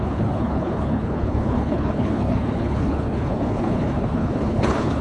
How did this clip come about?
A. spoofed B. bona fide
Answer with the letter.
A